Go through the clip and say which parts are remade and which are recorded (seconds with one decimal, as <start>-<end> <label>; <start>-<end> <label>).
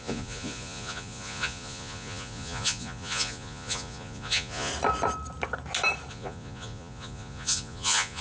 0.0-4.7 remade; 4.7-6.1 recorded; 6.1-8.2 remade